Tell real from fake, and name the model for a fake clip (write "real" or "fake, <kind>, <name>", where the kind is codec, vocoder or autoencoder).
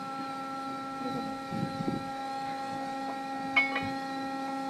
real